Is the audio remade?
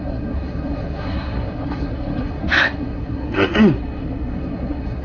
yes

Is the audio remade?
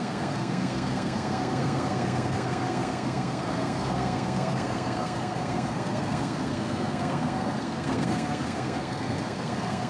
yes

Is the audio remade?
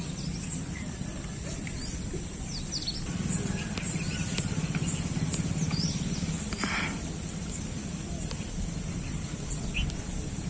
no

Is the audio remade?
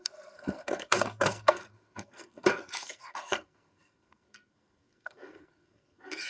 yes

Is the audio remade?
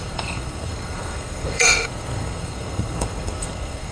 yes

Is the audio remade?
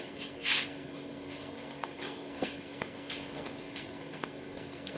yes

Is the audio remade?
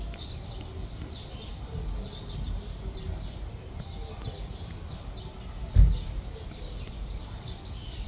no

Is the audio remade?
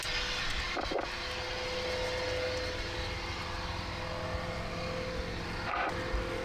no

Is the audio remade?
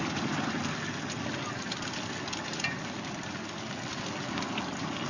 no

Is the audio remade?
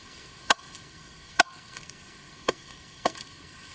yes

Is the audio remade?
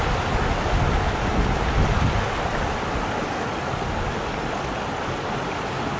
no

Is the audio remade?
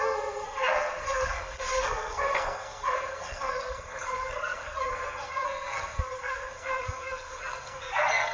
yes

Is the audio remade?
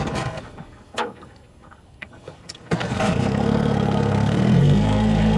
yes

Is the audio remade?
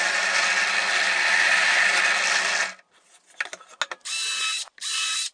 no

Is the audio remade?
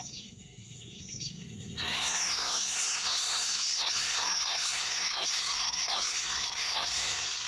yes